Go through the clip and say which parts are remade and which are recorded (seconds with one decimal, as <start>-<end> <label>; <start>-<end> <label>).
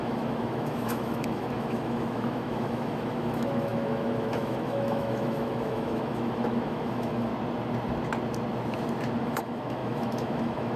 0.0-7.3 remade; 7.3-9.2 recorded; 9.2-10.8 remade